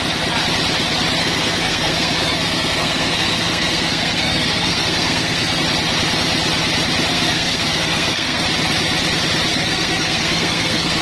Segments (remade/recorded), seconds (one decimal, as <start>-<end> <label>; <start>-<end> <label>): 0.0-1.2 recorded; 1.2-5.6 remade; 5.6-7.1 recorded; 7.1-8.4 remade; 8.4-9.5 recorded; 9.5-11.0 remade